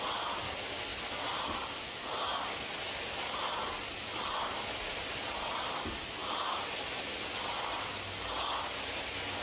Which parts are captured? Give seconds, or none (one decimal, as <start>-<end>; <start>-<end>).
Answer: 0.0-9.4